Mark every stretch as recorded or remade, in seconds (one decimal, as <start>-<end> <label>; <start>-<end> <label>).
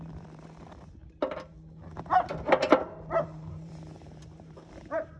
0.0-1.0 remade; 1.0-3.2 recorded; 3.2-5.2 remade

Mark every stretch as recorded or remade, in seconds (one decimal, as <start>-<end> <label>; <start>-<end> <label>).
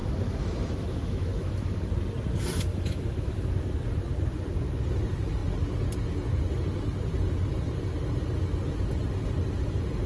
0.0-1.9 remade; 1.9-2.7 recorded; 2.7-3.7 remade; 3.7-10.1 recorded